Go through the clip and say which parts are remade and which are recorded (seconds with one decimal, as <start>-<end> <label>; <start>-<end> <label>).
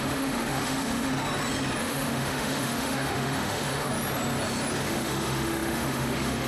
0.0-1.1 remade; 1.1-1.8 recorded; 1.8-3.9 remade; 3.9-4.8 recorded; 4.8-6.5 remade